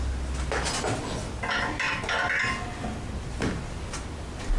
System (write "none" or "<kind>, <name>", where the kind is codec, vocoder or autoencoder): none